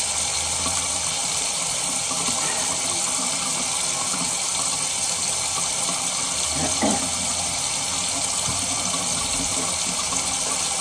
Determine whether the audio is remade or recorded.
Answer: remade